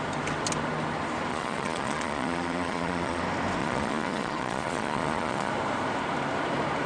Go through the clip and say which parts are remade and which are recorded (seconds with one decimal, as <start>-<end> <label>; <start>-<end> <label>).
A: 0.0-1.3 recorded; 1.3-3.2 remade; 3.2-3.6 recorded; 3.6-5.5 remade; 5.5-6.9 recorded